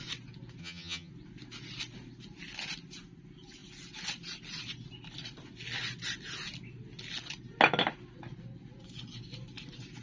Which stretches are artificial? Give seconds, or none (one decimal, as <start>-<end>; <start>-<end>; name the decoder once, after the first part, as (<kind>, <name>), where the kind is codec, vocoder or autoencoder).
0.6-1.1 (vocoder, HiFi-GAN)